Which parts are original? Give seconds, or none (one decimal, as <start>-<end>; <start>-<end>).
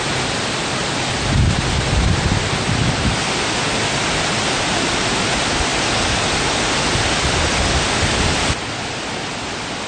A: 0.0-9.9